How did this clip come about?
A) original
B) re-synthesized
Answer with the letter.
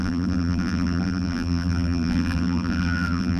B